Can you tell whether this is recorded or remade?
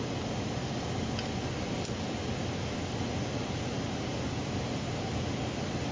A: recorded